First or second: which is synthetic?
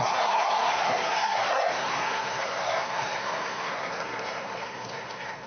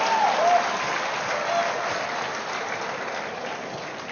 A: first